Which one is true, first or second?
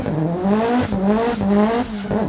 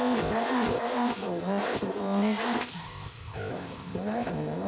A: first